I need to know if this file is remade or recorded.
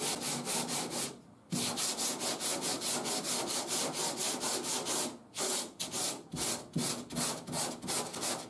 recorded